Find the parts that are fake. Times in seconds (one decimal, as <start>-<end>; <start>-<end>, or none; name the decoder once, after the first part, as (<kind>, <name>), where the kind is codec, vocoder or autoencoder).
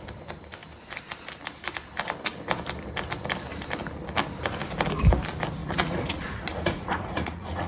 5.6-7.7 (vocoder, Vocos)